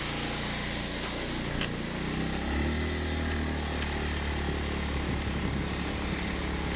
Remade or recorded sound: recorded